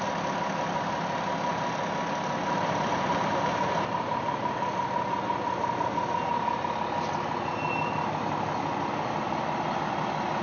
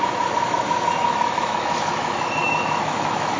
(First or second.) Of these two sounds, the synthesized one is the second